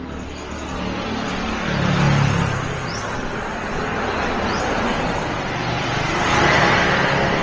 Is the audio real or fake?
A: real